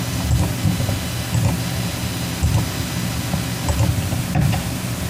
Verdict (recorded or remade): recorded